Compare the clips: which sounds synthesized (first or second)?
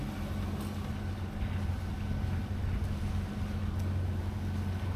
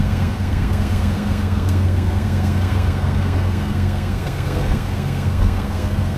second